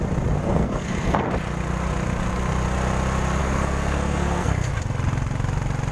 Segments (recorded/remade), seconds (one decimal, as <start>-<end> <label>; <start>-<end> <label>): 0.0-0.4 recorded; 0.4-1.3 remade; 1.3-3.4 recorded; 3.4-4.7 remade; 4.7-5.9 recorded